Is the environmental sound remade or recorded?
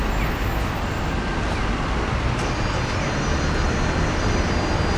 recorded